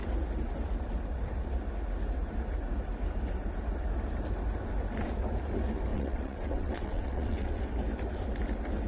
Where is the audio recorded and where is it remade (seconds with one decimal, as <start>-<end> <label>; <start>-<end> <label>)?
0.0-5.9 recorded; 5.9-7.6 remade; 7.6-8.9 recorded